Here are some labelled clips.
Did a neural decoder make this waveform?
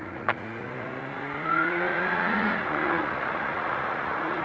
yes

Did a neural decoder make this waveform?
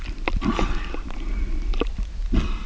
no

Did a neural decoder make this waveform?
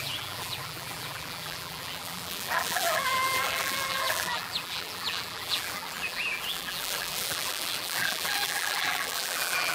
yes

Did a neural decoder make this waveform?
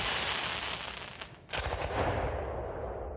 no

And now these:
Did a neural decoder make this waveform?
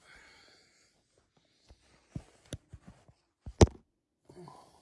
no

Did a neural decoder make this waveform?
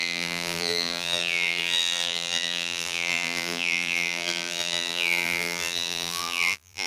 yes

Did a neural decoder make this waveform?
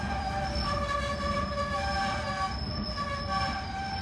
no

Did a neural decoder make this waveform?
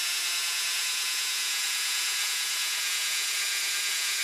yes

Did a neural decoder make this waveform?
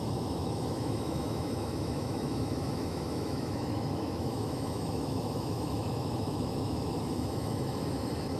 yes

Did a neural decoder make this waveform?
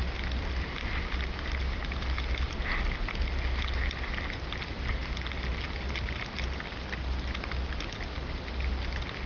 no